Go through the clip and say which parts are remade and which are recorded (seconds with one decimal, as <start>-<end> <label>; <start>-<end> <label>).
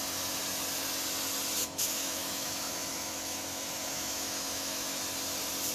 0.0-1.6 recorded; 1.6-5.0 remade; 5.0-5.7 recorded